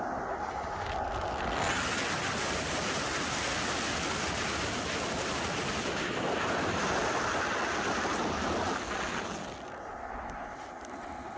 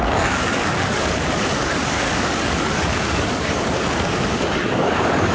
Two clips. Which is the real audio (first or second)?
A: first